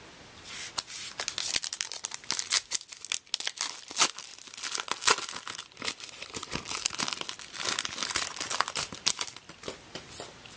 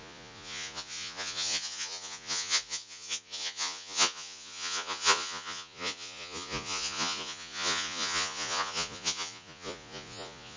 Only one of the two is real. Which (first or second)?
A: first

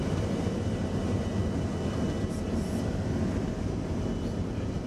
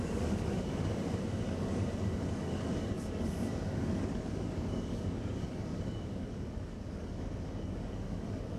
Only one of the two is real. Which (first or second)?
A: first